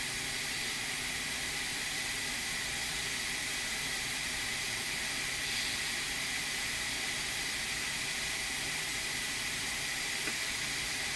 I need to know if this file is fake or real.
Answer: fake